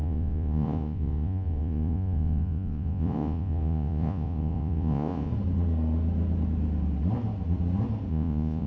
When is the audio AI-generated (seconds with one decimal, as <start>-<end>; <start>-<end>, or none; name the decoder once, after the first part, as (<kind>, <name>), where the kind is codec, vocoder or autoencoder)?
0.0-5.3 (vocoder, Vocos); 8.1-8.7